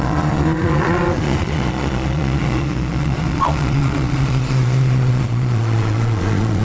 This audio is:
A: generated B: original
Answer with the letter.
A